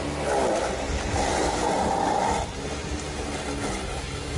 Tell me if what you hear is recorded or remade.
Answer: recorded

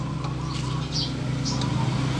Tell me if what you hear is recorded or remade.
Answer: recorded